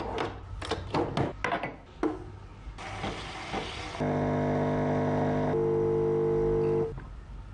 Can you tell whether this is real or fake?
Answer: real